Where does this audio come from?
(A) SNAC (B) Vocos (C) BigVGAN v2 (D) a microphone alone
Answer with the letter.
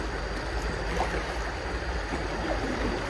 D